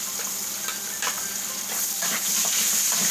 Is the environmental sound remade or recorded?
recorded